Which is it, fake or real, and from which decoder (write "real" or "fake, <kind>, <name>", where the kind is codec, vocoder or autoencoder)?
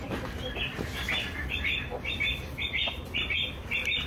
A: fake, vocoder, BigVGAN v2